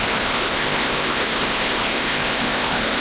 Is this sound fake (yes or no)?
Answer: yes